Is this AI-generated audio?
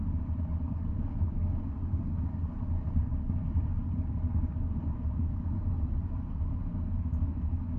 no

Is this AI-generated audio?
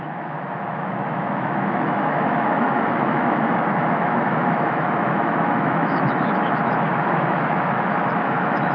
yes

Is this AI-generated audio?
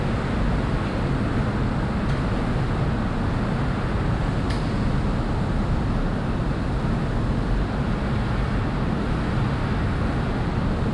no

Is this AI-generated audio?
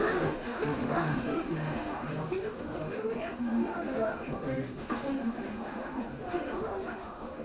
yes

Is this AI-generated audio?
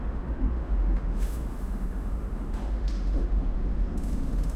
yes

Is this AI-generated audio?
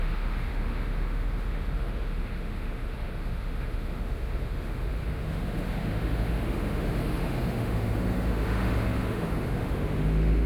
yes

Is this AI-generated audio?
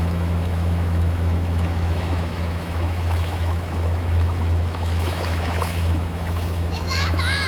yes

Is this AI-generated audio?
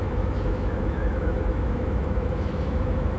yes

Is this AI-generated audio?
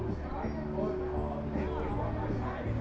no